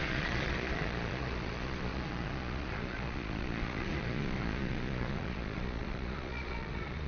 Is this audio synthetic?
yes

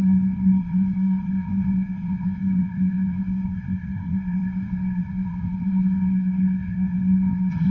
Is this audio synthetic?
yes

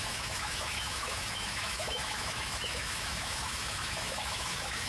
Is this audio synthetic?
yes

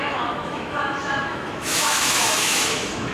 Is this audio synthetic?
yes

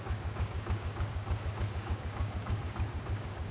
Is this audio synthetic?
yes